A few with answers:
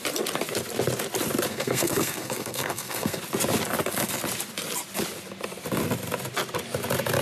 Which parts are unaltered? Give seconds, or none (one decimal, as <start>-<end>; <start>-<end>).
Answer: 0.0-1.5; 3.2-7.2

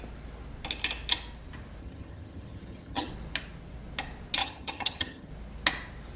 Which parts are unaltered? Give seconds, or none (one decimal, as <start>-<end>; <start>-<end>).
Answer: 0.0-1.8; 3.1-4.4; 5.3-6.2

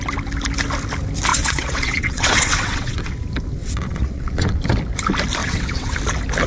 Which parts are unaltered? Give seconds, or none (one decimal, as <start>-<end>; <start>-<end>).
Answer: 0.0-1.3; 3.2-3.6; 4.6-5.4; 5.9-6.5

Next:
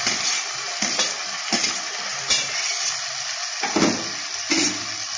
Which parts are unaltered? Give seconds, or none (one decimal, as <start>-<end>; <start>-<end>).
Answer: 0.0-5.2

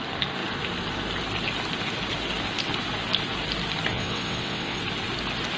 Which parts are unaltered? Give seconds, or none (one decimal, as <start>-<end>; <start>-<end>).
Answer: 0.0-3.9; 4.8-5.6